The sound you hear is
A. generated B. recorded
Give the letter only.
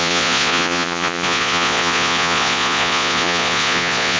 A